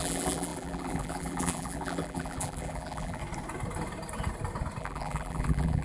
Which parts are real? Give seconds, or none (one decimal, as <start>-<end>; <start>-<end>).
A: 3.2-4.8